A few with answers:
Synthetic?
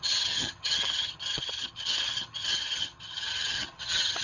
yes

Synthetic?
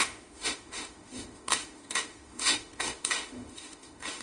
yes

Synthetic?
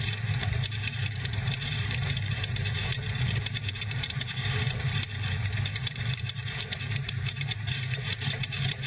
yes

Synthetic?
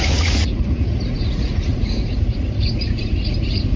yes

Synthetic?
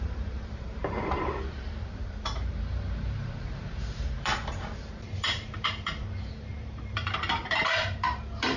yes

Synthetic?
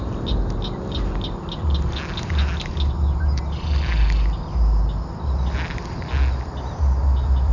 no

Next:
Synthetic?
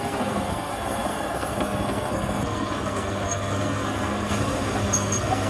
yes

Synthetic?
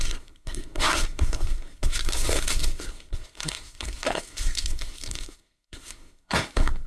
yes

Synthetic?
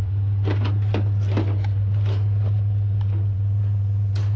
no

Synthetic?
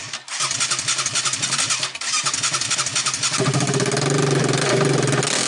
no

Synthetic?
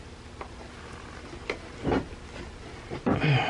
no